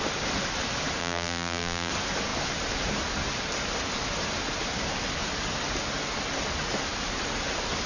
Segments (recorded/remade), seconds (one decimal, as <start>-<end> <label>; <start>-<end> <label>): 0.0-1.0 recorded; 1.0-1.9 remade; 1.9-7.9 recorded